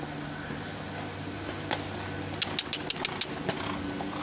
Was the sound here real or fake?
real